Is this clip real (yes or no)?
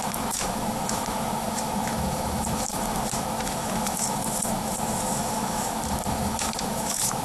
no